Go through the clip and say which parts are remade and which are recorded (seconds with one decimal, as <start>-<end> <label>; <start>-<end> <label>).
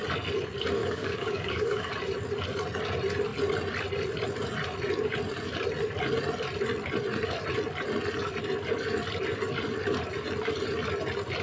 0.0-0.8 recorded; 0.8-1.9 remade; 1.9-11.4 recorded